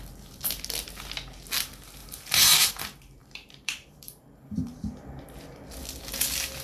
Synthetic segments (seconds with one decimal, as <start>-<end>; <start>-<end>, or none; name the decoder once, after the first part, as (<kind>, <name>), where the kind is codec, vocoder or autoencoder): 2.0-2.7 (vocoder, BigVGAN v2); 3.2-4.9